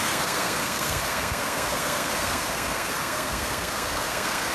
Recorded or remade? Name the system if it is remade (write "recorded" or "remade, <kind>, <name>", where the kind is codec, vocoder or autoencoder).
remade, codec, SNAC